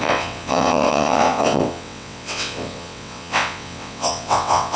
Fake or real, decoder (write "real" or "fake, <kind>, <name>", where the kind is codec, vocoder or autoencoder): fake, vocoder, WaveNeXt